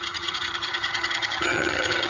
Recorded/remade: remade